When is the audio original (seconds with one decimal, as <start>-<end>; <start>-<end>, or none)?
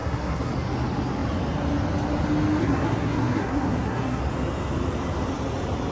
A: 0.5-2.6; 4.2-5.9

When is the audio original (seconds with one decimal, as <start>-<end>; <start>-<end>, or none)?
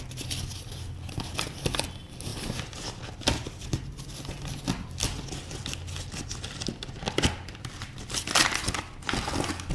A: 0.0-9.7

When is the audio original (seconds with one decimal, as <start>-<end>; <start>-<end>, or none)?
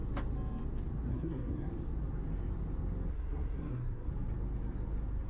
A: 0.0-1.1; 1.7-3.1; 4.1-5.3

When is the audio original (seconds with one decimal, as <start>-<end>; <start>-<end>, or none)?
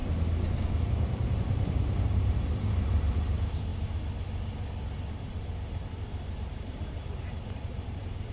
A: 0.0-0.8; 3.7-5.1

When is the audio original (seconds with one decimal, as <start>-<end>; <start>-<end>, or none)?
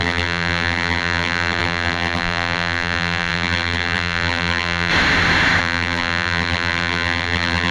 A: 4.9-5.6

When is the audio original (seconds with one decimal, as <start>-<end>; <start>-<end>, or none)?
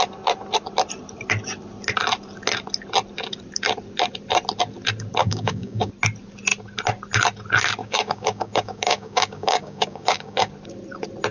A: 0.0-5.2; 5.9-7.8; 10.5-11.3